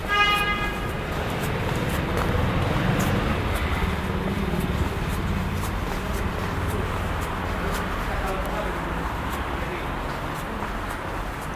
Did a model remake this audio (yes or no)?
no